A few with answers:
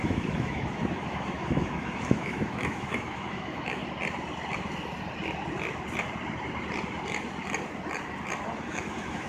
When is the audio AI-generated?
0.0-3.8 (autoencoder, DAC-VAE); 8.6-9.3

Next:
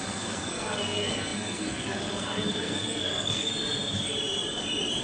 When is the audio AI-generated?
0.0-3.5 (codec, SNAC)

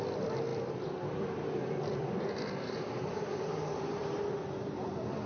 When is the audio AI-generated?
0.5-3.4 (vocoder, BigVGAN v2)

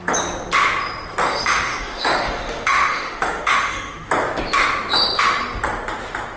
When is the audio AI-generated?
1.2-4.1 (autoencoder, DAC-VAE)